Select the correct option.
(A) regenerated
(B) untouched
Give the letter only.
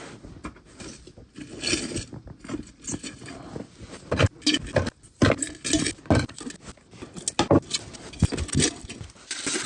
B